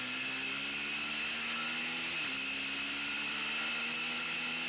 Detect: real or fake real